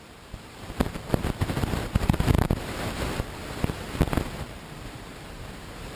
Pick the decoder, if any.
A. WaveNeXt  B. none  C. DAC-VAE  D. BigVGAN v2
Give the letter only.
D